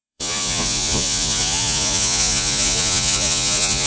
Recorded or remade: remade